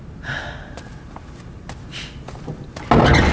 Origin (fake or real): real